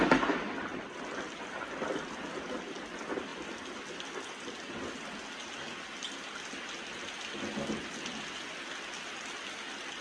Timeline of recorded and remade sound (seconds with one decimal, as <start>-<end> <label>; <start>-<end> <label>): 0.0-10.0 recorded